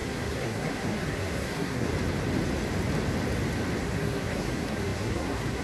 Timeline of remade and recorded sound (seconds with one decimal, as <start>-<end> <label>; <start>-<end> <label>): 0.0-1.9 remade; 1.9-3.8 recorded; 3.8-5.6 remade